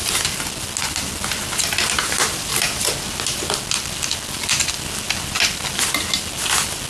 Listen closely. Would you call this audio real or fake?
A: real